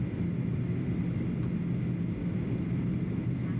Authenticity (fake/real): real